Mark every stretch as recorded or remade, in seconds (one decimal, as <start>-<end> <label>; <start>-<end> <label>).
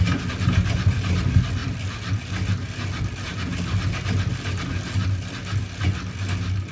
0.0-6.7 recorded